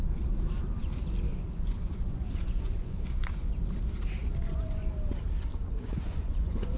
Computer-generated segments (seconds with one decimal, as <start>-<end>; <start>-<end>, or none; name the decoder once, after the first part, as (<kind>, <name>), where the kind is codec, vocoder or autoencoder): 1.3-3.5 (vocoder, Vocos); 4.2-4.9; 5.5-6.8